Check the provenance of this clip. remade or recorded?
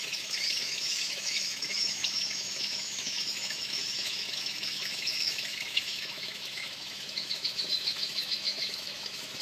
remade